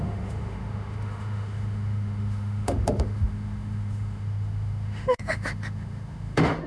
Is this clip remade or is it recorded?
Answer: remade